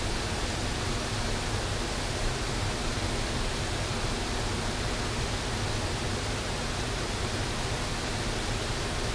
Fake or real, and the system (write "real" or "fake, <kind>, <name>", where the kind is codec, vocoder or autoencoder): real